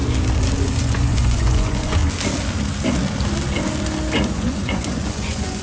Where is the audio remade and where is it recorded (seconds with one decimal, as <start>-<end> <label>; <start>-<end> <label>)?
0.0-0.8 recorded; 0.8-2.0 remade; 2.0-4.3 recorded; 4.3-5.6 remade